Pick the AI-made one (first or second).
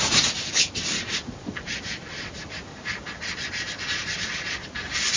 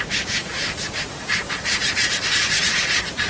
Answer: second